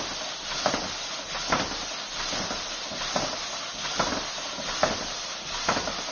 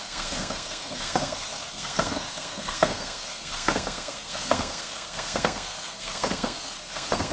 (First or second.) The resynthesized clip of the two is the second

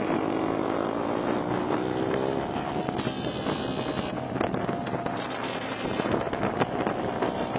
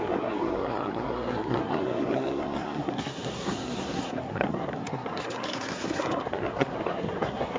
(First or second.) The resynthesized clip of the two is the second